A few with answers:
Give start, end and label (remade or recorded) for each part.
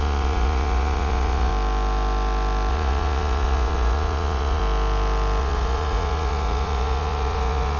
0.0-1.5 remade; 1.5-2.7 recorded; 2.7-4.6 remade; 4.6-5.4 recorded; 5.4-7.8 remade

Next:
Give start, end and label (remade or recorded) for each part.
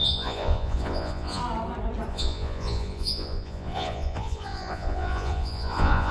0.0-1.4 remade; 1.4-2.1 recorded; 2.1-6.1 remade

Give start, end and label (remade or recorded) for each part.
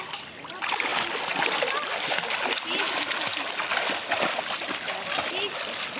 0.0-6.0 recorded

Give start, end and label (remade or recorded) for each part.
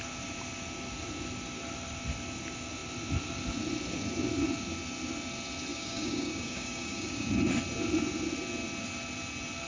0.0-5.7 recorded; 5.7-7.3 remade; 7.3-9.7 recorded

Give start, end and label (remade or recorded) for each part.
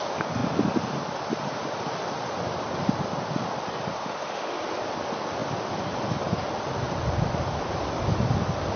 0.0-4.0 recorded; 4.0-4.6 remade; 4.6-8.8 recorded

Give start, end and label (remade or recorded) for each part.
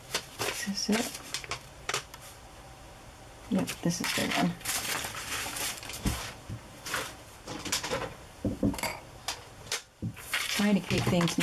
0.0-4.2 remade; 4.2-5.0 recorded; 5.0-8.9 remade; 8.9-9.6 recorded; 9.6-11.4 remade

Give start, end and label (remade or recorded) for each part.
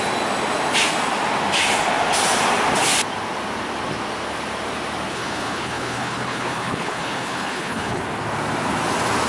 0.0-5.1 recorded; 5.1-8.0 remade; 8.0-9.3 recorded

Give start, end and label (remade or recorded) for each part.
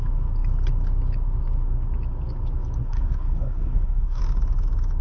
0.0-2.8 recorded; 2.8-4.2 remade; 4.2-5.0 recorded